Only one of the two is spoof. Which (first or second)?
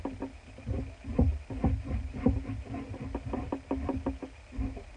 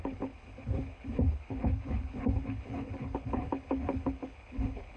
second